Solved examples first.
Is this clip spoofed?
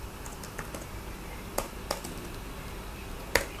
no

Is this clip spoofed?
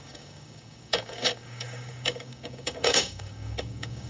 yes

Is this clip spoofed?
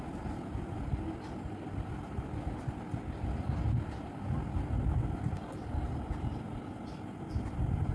no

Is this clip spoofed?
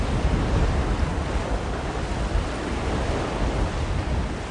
no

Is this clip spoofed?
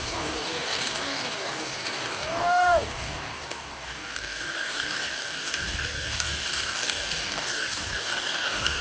yes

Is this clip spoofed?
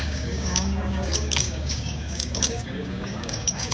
yes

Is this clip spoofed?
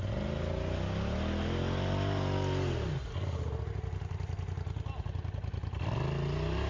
no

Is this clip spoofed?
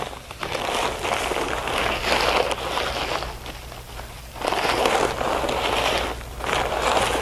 no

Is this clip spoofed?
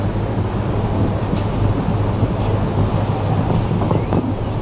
no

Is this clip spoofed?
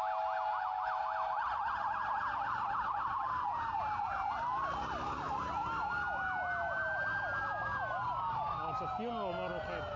no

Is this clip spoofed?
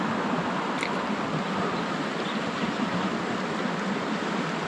no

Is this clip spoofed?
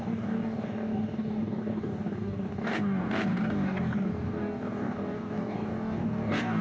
yes